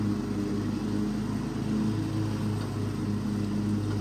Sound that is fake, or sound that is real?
real